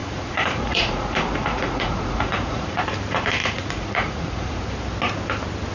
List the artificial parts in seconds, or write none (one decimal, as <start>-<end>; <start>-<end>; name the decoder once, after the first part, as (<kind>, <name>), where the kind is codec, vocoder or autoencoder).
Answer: 0.0-2.8 (vocoder, Vocos); 3.4-4.6